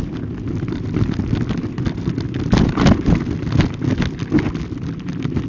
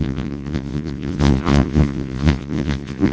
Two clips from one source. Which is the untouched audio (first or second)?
first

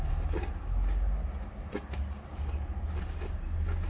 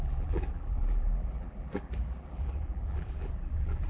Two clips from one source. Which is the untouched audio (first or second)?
first